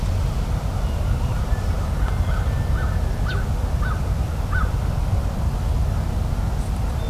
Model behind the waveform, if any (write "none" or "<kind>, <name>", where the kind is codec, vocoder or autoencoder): none